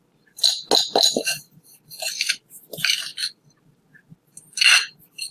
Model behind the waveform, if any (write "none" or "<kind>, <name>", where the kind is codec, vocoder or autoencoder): none